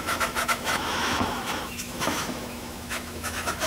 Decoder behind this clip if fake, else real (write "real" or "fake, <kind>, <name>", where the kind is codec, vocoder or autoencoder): fake, autoencoder, DAC-VAE